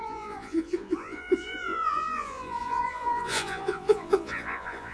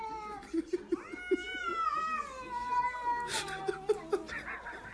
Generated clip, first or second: first